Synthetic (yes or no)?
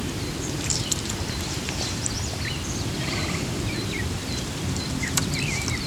yes